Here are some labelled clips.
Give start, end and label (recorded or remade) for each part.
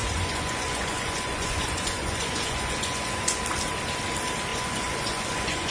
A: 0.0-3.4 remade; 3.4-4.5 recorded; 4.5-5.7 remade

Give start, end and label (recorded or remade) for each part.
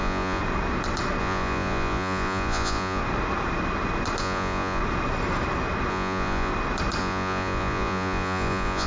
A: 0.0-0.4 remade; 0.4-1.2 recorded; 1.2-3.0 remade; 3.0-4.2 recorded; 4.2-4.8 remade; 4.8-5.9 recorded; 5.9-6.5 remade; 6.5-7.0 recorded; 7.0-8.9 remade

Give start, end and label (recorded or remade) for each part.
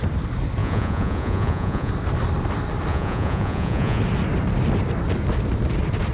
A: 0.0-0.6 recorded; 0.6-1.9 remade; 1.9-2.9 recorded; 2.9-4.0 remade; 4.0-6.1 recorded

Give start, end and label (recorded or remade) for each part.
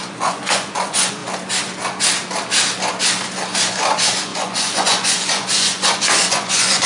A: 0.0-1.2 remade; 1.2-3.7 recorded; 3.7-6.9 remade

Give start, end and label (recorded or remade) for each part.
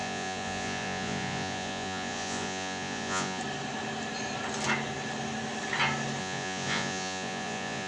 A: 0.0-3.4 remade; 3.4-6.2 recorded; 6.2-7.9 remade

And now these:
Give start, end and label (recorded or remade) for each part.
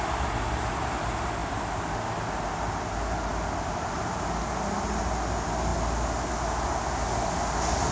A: 0.0-7.9 recorded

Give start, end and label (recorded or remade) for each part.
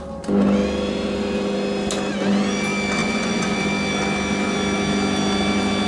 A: 0.0-3.0 recorded; 3.0-3.6 remade; 3.6-5.9 recorded